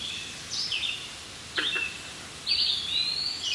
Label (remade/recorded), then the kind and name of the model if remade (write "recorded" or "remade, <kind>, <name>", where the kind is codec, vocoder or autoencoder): remade, vocoder, BigVGAN v2